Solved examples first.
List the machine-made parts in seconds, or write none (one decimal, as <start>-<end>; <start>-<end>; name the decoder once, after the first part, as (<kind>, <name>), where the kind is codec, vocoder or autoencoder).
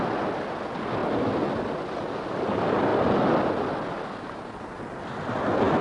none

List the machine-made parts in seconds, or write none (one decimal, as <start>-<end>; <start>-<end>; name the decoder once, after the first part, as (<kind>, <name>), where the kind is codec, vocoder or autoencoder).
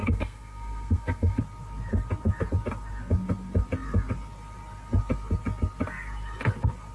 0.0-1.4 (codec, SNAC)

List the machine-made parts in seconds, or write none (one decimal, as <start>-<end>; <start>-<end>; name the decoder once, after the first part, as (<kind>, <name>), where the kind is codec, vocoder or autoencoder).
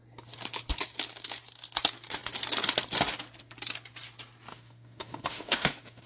4.5-6.1 (autoencoder, DAC-VAE)